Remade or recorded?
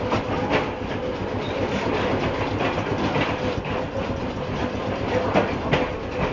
recorded